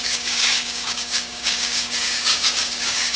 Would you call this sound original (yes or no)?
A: no